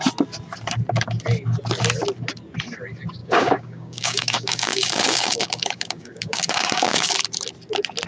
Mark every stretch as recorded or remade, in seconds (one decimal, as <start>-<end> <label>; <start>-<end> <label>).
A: 0.0-3.2 recorded; 3.2-7.1 remade; 7.1-8.1 recorded